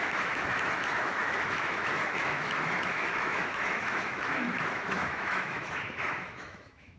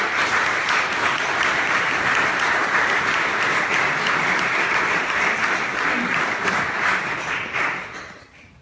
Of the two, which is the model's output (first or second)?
first